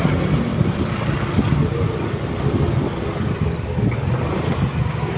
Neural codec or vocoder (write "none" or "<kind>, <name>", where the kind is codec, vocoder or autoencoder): vocoder, BigVGAN v2